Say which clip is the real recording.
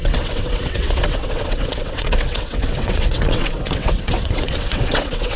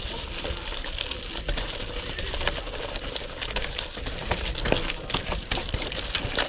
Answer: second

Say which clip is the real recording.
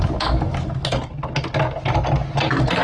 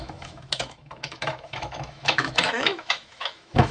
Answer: first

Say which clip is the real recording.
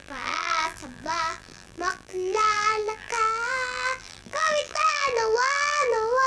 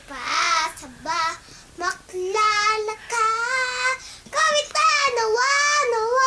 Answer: second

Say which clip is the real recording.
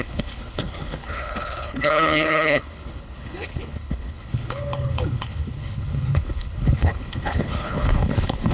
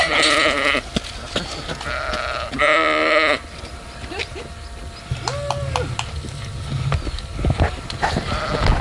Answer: second